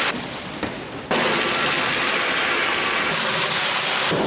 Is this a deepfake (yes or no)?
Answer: no